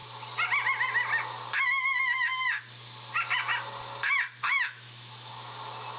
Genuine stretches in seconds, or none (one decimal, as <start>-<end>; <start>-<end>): 0.0-4.4; 5.3-6.0